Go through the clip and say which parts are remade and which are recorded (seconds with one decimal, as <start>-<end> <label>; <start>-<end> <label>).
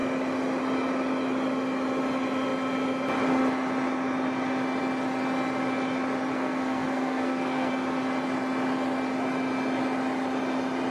0.0-6.3 recorded; 6.3-7.7 remade; 7.7-10.9 recorded